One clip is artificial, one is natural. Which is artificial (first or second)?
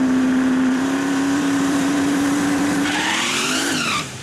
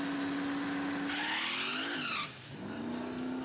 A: first